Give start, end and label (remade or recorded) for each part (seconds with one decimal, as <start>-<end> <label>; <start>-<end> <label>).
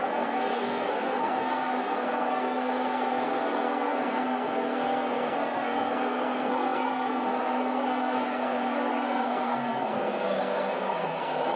0.0-11.6 remade